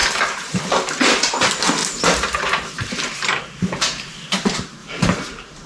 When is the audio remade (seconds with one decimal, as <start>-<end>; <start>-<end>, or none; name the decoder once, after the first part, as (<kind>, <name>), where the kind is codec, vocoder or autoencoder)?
0.0-0.6 (vocoder, BigVGAN v2); 1.8-3.4; 4.8-5.7